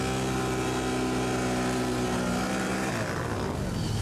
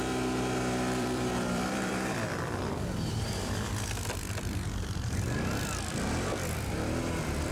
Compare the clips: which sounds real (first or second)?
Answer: first